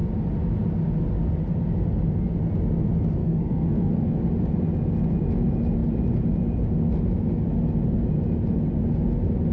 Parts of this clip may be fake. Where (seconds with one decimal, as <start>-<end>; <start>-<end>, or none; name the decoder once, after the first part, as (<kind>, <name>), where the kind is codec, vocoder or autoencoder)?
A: 3.2-3.9 (codec, SNAC)